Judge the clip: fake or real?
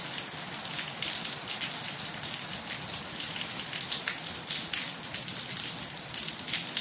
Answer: real